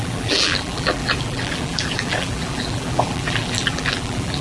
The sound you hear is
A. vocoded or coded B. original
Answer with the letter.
A